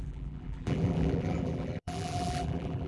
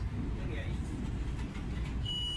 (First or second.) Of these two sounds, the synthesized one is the first